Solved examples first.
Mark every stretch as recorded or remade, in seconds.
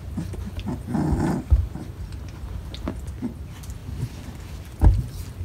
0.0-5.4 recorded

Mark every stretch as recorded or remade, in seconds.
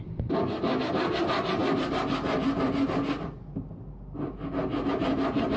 0.0-5.6 recorded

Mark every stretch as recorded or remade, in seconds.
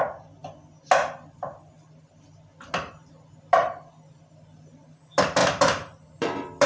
0.0-6.7 recorded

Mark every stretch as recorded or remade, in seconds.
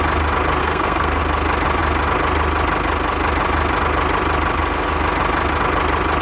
0.0-0.6 recorded; 0.6-1.2 remade; 1.2-6.2 recorded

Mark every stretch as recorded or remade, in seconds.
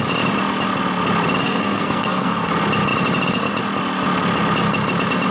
0.0-1.4 recorded; 1.4-2.5 remade; 2.5-5.3 recorded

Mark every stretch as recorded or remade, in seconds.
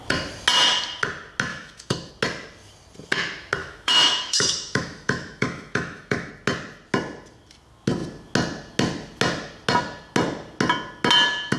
0.0-1.5 recorded; 1.5-2.1 remade; 2.1-3.6 recorded; 3.6-6.3 remade; 6.3-11.6 recorded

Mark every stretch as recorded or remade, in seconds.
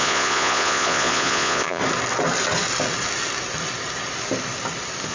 0.0-1.8 remade; 1.8-5.1 recorded